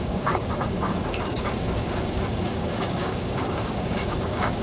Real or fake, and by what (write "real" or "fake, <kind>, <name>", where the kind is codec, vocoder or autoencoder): fake, codec, DAC